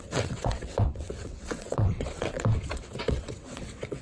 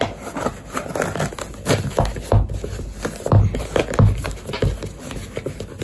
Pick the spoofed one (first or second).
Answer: first